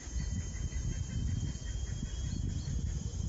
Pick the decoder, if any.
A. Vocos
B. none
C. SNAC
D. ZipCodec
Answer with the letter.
B